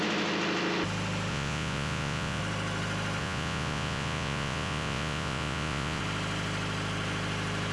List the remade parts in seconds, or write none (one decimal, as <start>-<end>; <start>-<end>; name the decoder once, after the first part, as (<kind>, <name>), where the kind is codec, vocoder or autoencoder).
1.3-2.4 (vocoder, Vocos); 3.2-6.0